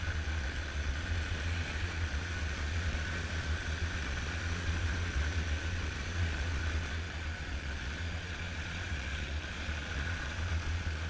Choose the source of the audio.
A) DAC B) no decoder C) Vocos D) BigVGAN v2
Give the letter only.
C